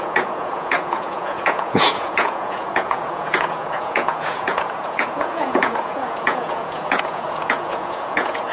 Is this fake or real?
fake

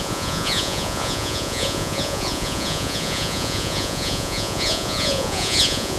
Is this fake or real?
fake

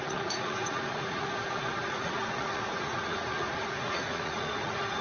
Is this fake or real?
fake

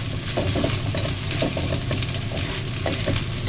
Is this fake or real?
real